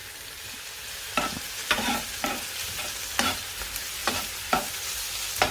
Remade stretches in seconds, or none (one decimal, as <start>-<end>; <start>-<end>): 0.0-0.9; 1.6-3.4; 4.0-4.7